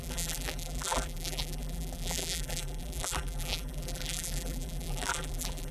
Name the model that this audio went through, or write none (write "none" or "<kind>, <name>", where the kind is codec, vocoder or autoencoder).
vocoder, BigVGAN v2